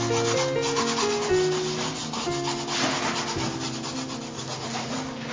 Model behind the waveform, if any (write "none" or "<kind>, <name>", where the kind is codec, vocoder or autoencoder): none